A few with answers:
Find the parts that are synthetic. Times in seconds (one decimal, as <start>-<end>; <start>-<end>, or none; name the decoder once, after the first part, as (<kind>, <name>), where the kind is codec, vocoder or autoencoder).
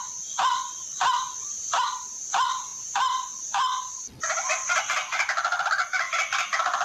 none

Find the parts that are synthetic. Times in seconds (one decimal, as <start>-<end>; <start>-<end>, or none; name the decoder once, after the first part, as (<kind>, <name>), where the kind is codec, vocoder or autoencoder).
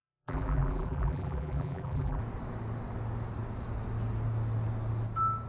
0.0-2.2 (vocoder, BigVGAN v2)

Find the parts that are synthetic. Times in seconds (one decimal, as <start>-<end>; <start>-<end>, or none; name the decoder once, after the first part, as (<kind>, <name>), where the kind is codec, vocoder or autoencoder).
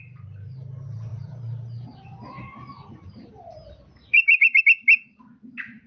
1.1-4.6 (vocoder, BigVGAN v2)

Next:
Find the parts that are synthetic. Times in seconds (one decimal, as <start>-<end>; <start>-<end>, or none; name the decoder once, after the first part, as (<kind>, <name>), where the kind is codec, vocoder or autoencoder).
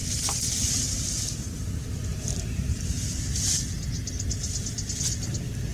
0.0-1.2 (vocoder, BigVGAN v2); 2.1-3.3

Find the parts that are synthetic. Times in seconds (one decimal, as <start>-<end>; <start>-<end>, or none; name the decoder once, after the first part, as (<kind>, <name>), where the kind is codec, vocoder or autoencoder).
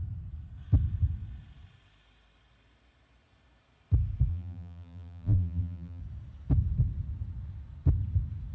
4.3-6.0 (vocoder, BigVGAN v2)